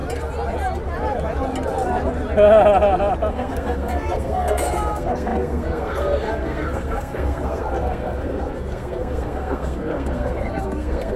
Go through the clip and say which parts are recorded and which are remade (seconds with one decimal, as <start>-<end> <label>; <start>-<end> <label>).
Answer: 0.0-3.3 recorded; 3.3-11.2 remade